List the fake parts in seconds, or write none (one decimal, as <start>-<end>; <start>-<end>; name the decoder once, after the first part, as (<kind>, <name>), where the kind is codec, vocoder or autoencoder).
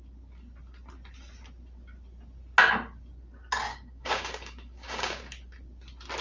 3.7-5.2 (codec, DAC)